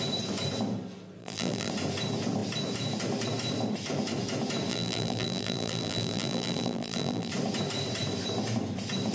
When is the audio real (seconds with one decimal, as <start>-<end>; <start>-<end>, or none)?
0.0-1.2; 1.7-4.7; 7.3-9.1